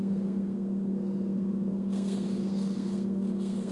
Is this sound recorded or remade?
remade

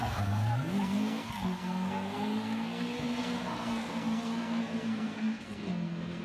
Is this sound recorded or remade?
remade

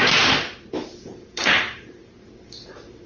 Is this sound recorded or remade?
remade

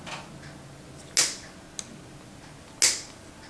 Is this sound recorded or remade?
recorded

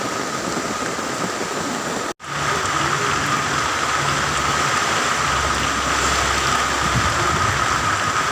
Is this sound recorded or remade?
recorded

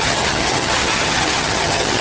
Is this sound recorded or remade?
remade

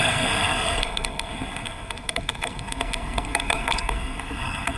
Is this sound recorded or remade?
remade